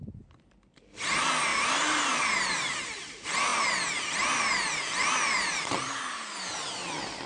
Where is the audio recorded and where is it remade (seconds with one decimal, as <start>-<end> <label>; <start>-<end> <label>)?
0.0-1.5 recorded; 1.5-2.8 remade; 2.8-7.3 recorded